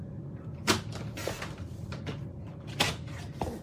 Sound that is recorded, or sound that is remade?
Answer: recorded